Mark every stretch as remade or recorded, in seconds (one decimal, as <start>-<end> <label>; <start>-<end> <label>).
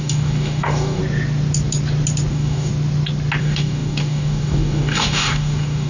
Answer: 0.0-1.0 remade; 1.0-2.3 recorded; 2.3-2.7 remade; 2.7-3.4 recorded; 3.4-5.9 remade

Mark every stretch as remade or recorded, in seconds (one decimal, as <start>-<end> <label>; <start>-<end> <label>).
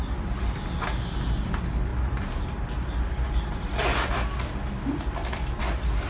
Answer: 0.0-6.1 recorded